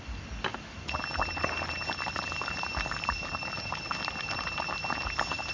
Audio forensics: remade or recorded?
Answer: recorded